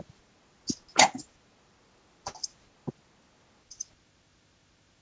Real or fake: real